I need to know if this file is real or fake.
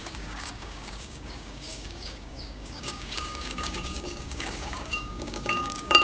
fake